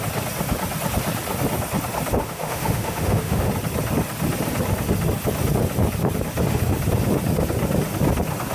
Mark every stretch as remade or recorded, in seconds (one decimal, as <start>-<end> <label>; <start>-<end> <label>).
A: 0.0-2.2 recorded; 2.2-3.5 remade; 3.5-8.5 recorded